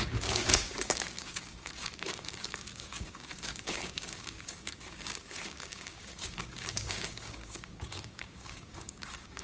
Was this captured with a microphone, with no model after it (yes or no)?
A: no